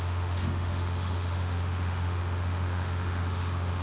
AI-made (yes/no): yes